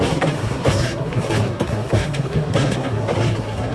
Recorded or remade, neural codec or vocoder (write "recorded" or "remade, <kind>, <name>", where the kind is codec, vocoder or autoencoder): remade, codec, SNAC